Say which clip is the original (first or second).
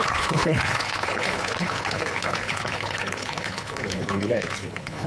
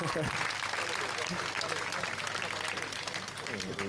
second